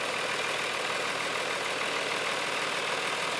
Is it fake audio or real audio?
real